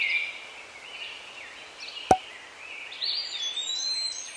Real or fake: real